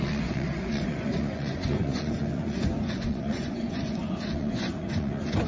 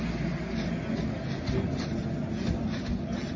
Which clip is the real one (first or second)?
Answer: second